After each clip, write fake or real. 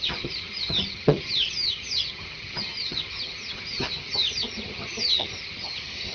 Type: fake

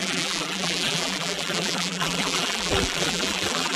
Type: fake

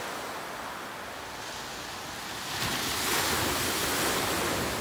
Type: real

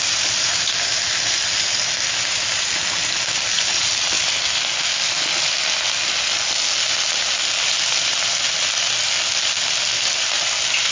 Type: real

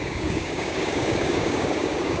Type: fake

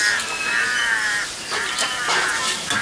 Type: real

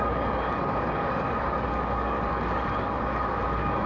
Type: fake